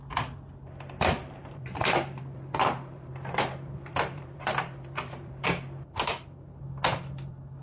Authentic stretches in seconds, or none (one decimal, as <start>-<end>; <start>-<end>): 0.0-1.2; 5.5-7.6